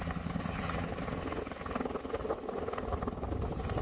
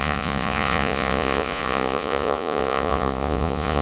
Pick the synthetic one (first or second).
second